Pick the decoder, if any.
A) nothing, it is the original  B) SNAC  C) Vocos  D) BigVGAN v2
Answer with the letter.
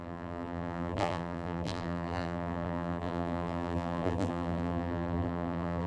D